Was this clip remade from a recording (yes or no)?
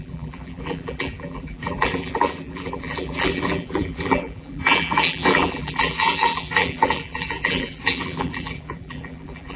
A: yes